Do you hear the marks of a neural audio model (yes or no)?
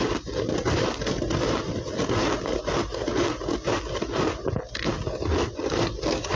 no